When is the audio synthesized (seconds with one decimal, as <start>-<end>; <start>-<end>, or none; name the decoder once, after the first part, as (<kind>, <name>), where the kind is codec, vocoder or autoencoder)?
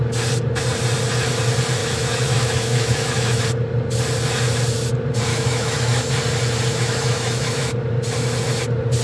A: 1.8-3.4 (autoencoder, DAC-VAE); 5.3-6.0; 6.7-7.7